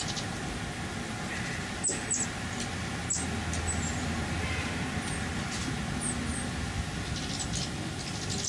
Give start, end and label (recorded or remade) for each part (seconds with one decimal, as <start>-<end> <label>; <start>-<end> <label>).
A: 0.0-8.5 recorded